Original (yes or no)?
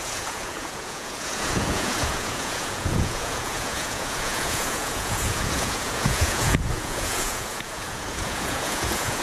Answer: no